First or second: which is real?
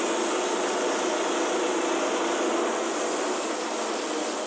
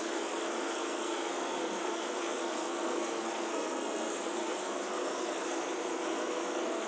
first